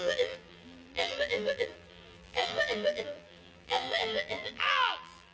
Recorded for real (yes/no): no